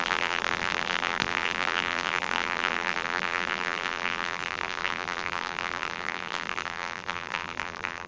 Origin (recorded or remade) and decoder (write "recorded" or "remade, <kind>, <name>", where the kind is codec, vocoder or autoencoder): remade, vocoder, BigVGAN v2